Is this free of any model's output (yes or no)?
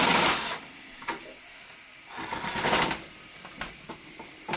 no